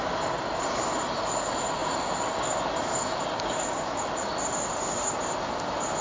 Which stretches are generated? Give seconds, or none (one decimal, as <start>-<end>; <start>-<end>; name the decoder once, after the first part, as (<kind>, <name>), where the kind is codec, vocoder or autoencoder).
0.0-1.8 (vocoder, BigVGAN v2); 2.9-4.3; 5.1-6.0